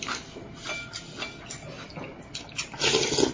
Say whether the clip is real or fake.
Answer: real